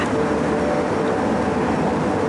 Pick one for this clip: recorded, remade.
recorded